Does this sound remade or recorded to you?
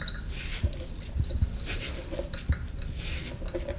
recorded